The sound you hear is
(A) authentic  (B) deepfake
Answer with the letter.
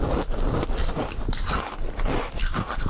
A